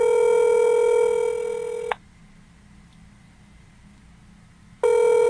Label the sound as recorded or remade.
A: recorded